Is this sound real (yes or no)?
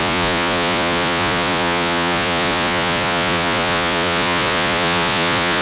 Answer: no